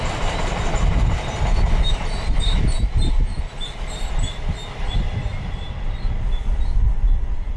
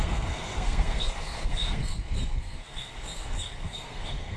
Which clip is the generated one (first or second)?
second